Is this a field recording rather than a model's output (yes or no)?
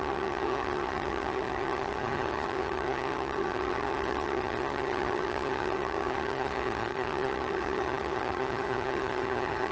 no